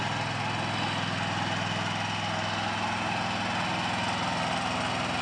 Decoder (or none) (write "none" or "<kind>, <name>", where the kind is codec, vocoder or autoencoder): none